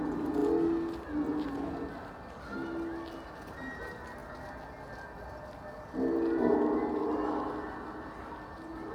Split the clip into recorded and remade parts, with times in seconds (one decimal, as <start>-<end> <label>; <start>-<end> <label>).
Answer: 0.0-8.9 recorded

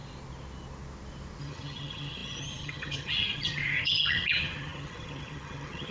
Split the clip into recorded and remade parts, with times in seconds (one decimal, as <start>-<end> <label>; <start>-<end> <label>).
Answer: 0.0-1.4 recorded; 1.4-5.9 remade

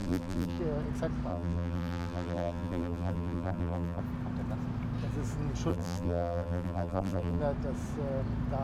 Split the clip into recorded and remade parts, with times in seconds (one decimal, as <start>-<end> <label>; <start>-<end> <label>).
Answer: 0.0-0.6 remade; 0.6-1.3 recorded; 1.3-4.0 remade; 4.0-5.7 recorded; 5.7-7.4 remade; 7.4-8.6 recorded